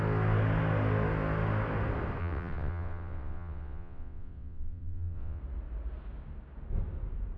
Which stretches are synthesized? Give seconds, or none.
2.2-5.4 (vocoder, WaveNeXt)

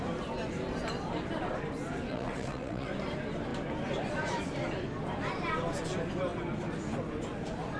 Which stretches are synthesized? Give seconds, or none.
2.1-2.9 (vocoder, WaveNeXt)

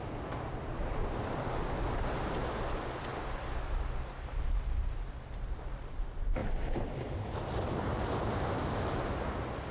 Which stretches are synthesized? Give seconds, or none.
none

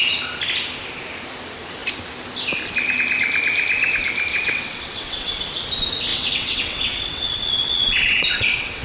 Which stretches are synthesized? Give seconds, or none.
4.3-5.4 (vocoder, WaveNeXt); 6.1-8.8

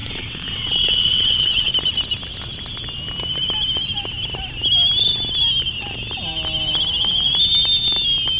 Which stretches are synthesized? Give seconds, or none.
0.0-1.7 (vocoder, WaveNeXt)